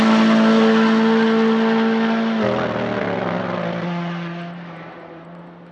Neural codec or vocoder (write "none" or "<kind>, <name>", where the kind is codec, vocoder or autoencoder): none